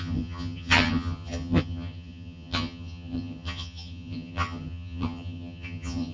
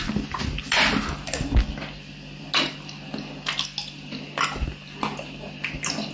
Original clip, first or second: second